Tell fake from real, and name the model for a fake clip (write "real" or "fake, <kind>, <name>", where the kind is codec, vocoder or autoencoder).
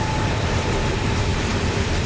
fake, vocoder, BigVGAN v2